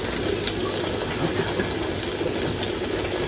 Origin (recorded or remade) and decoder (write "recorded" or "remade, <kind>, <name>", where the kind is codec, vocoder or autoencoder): recorded